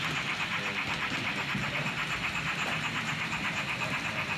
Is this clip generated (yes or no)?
yes